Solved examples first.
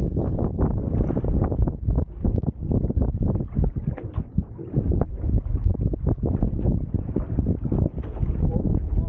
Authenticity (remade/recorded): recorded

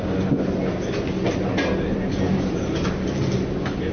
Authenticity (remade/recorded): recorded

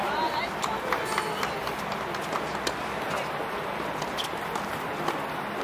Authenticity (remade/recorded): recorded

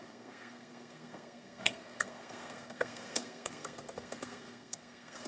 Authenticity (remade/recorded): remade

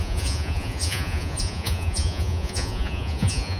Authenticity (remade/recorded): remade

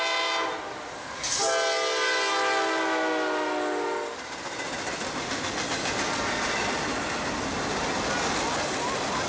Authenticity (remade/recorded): recorded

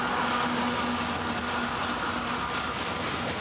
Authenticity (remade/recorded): recorded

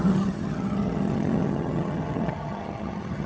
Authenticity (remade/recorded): remade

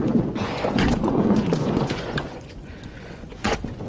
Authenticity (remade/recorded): remade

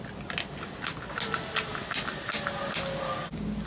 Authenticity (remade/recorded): recorded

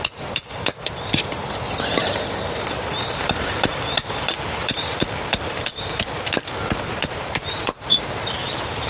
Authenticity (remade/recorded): remade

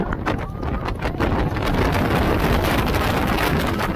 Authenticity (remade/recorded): recorded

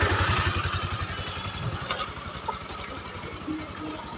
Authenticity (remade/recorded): recorded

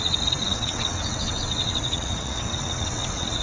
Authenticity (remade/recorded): remade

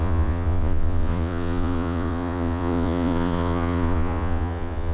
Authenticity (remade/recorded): remade